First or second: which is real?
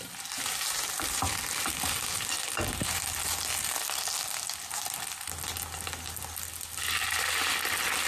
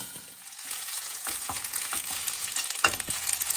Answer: first